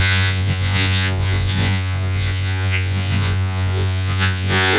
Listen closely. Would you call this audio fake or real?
fake